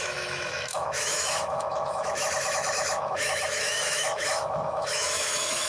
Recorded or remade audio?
remade